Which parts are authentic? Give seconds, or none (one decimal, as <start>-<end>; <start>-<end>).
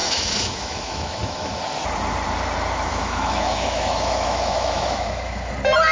1.6-2.9; 5.5-5.9